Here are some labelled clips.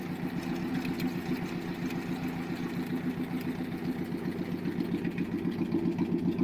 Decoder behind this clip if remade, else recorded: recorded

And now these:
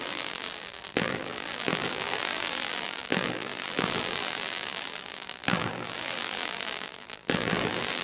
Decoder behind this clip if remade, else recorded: remade, vocoder, BigVGAN v2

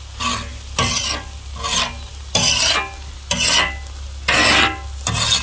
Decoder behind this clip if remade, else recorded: recorded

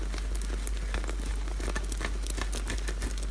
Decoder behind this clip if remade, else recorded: recorded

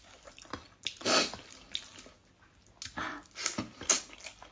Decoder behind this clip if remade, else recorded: recorded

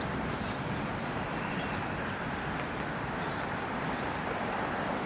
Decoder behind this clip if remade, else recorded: recorded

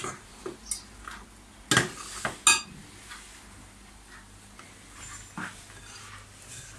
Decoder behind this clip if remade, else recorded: recorded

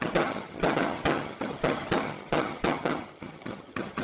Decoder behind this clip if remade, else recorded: remade, vocoder, HiFi-GAN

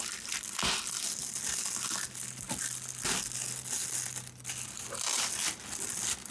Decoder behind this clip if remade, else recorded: recorded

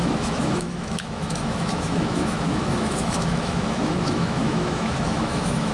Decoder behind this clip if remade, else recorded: remade, autoencoder, DAC-VAE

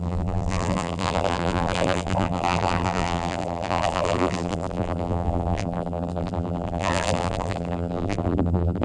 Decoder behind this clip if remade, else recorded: remade, vocoder, BigVGAN v2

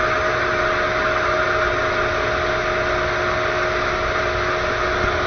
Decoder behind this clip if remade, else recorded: recorded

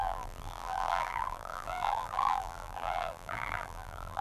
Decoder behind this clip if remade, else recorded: remade, vocoder, BigVGAN v2